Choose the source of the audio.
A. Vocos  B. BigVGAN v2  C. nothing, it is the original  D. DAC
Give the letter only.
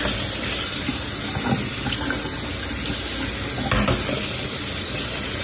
C